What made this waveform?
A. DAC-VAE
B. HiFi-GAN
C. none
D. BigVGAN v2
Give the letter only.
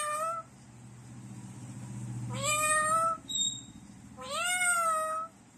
C